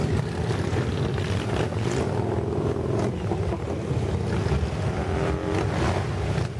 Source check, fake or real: real